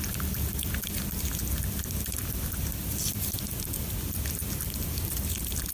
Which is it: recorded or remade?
recorded